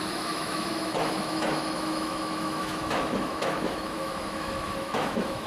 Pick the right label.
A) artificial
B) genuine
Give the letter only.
A